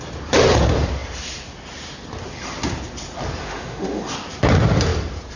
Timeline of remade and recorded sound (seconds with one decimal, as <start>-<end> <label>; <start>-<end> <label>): 0.0-3.4 recorded; 3.4-4.0 remade; 4.0-5.4 recorded